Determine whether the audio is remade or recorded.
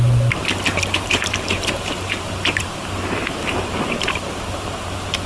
remade